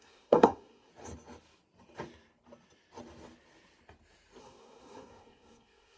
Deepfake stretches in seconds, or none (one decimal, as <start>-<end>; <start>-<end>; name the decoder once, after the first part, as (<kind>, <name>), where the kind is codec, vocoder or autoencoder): 0.0-0.9 (codec, SNAC); 4.4-6.0